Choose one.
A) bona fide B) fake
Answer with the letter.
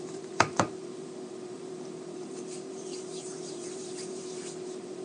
B